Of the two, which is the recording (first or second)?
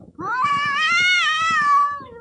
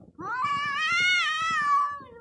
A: second